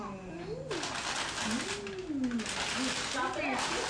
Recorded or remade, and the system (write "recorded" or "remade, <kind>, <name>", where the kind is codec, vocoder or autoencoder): recorded